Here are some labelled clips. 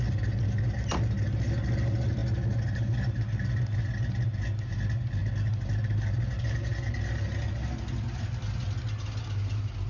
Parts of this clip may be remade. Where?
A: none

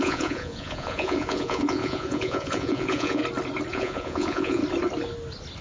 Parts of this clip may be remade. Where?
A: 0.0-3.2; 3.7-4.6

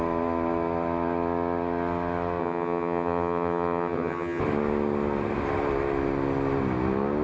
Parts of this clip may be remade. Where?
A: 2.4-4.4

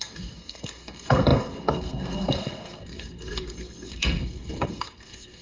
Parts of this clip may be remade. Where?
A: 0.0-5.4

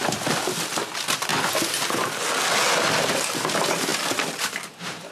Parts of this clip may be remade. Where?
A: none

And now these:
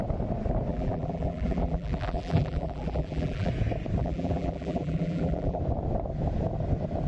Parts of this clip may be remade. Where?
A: 0.7-3.5; 4.0-5.6

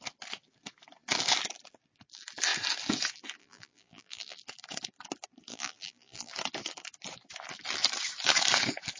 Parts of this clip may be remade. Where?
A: 3.4-4.4; 5.5-6.3